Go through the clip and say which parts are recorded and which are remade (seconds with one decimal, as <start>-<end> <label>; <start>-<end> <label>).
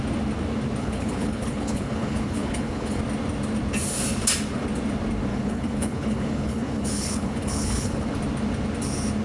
0.0-0.8 recorded; 0.8-3.0 remade; 3.0-5.3 recorded; 5.3-8.1 remade; 8.1-9.2 recorded